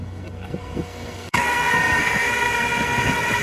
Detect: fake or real fake